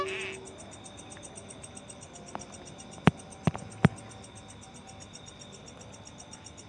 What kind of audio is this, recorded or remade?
recorded